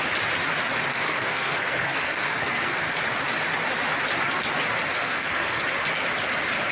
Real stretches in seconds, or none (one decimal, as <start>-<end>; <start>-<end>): 0.0-0.9; 2.8-5.0; 5.6-6.7